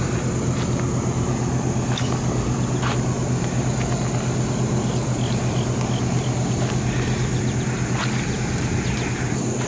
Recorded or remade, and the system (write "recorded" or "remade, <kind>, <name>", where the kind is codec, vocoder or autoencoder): recorded